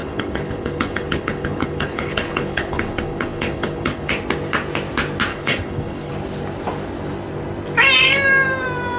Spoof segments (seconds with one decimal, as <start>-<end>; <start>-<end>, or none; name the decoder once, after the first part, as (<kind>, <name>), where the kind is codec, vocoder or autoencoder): 0.0-4.1 (codec, HILCodec); 5.3-6.1